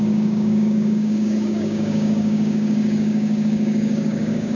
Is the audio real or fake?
fake